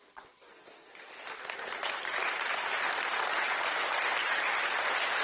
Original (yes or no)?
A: yes